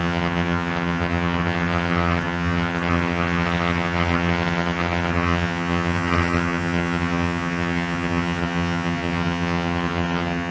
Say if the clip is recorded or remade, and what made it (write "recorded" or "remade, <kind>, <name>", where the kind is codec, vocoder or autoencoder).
remade, vocoder, HiFi-GAN